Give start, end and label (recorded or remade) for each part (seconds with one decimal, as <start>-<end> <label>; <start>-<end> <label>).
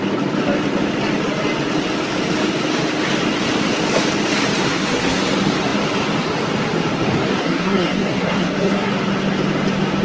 0.0-4.6 recorded; 4.6-5.2 remade; 5.2-7.4 recorded; 7.4-8.9 remade; 8.9-10.0 recorded